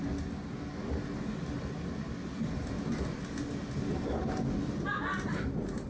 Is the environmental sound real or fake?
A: real